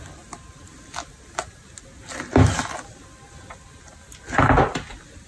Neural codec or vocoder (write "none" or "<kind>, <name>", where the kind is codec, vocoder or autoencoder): none